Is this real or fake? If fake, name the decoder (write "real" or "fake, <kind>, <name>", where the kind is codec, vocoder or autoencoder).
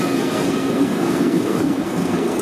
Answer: fake, codec, SNAC